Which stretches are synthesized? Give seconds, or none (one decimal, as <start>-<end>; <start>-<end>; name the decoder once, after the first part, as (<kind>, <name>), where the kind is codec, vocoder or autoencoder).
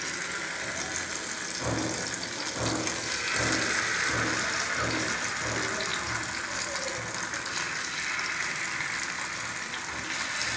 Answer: none